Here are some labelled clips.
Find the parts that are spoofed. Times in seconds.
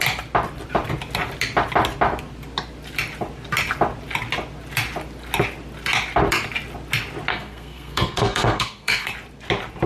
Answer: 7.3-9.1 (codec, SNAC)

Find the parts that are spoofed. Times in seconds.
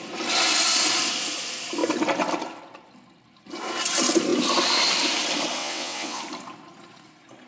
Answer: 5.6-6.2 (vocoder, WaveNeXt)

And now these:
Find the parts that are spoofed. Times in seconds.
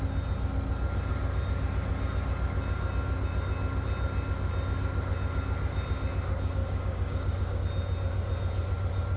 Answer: 6.6-7.6 (codec, DAC)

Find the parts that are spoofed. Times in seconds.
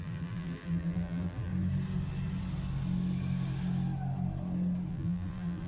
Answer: 0.0-1.5 (vocoder, BigVGAN v2); 4.9-5.7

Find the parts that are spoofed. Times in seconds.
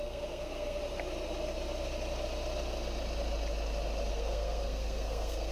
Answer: 0.0-0.8 (codec, SNAC); 4.1-5.5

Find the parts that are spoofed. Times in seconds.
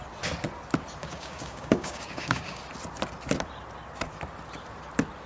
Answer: 1.0-2.6 (codec, DAC)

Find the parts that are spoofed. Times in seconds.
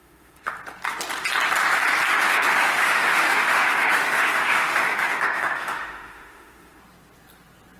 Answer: 0.0-0.5 (autoencoder, DAC-VAE); 2.1-6.8